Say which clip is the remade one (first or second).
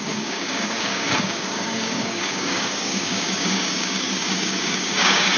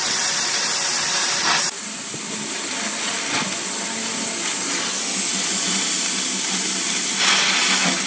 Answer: first